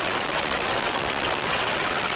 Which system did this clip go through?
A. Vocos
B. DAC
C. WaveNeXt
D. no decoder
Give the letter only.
C